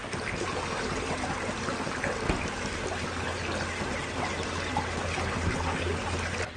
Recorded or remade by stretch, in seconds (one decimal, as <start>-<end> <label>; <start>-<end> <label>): 0.0-6.6 recorded